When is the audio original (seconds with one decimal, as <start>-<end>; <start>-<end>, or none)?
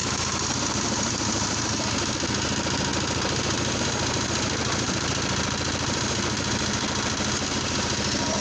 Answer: 0.0-0.6